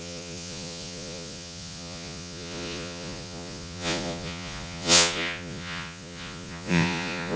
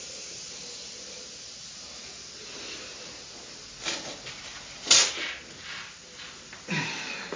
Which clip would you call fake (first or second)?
first